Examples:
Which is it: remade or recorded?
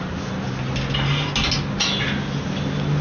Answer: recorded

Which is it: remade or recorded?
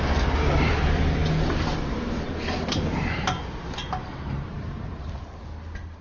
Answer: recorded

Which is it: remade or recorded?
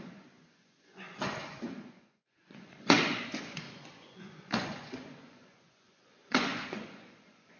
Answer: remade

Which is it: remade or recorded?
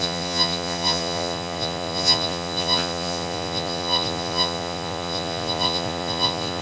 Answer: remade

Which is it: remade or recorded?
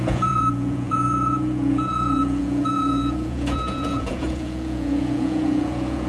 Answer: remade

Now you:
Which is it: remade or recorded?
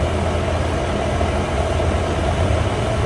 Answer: recorded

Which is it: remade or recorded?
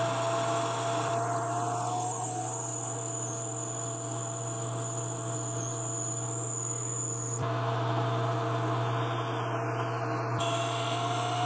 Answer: recorded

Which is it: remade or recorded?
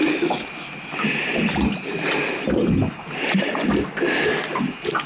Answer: recorded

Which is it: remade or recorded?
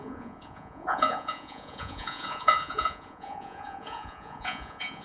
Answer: remade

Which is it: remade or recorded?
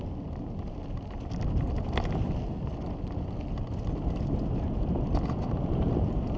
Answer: recorded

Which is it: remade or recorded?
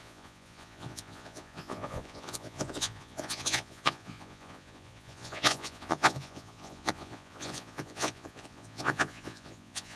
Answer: remade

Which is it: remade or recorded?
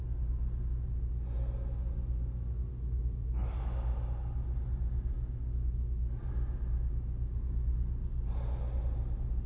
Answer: recorded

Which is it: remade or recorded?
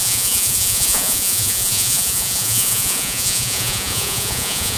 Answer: remade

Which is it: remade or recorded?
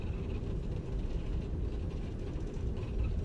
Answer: recorded